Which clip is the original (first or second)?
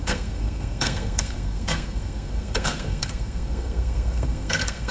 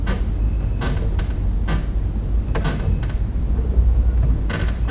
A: second